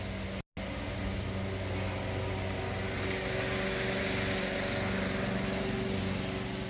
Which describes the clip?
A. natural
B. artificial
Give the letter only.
A